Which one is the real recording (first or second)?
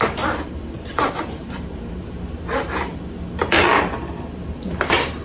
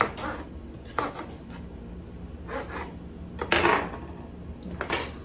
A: second